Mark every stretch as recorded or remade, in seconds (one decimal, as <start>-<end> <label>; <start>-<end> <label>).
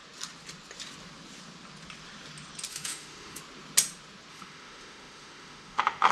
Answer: 0.0-2.7 recorded; 2.7-3.4 remade; 3.4-4.3 recorded; 4.3-6.1 remade